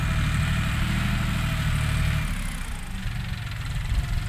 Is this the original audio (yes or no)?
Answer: yes